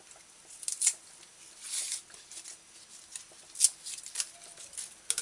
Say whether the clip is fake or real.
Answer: real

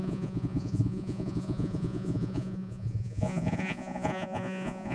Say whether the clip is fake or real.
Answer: fake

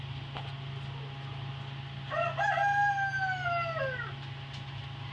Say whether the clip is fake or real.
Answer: real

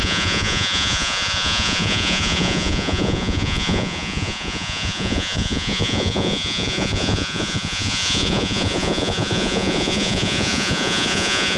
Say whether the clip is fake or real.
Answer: fake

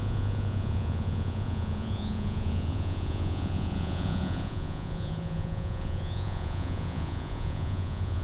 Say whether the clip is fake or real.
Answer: fake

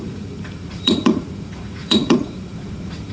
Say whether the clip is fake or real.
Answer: fake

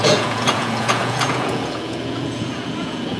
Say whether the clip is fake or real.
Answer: fake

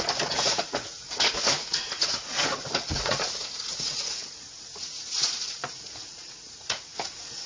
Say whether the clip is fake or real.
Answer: fake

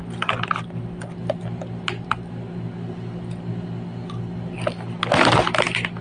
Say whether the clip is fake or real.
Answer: real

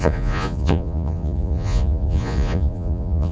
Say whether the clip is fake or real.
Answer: fake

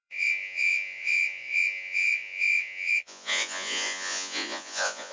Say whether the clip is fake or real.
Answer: fake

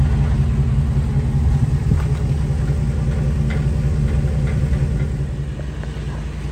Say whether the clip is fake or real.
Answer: real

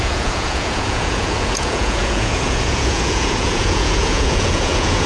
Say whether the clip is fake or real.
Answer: fake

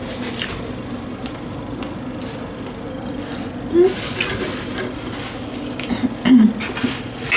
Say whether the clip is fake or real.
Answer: real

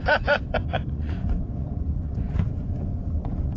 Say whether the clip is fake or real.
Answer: fake